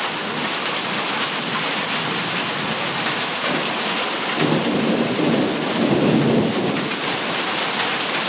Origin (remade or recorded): recorded